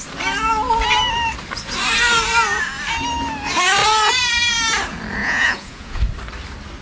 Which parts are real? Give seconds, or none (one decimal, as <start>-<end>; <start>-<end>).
0.0-5.2; 6.0-6.8